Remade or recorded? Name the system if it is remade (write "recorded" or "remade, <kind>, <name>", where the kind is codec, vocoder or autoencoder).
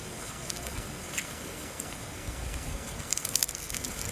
remade, codec, SNAC